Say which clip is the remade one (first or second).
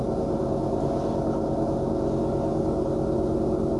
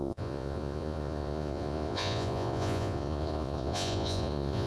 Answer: second